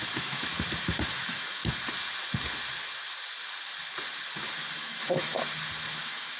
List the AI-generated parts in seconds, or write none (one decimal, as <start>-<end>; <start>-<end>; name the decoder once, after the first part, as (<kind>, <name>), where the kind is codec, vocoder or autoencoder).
0.0-0.5 (autoencoder, DAC-VAE); 1.1-1.6; 4.7-5.3; 6.0-6.4